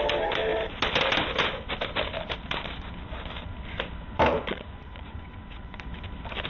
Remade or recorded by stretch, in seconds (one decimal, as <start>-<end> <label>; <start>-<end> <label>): 0.0-4.3 recorded; 4.3-5.8 remade; 5.8-6.5 recorded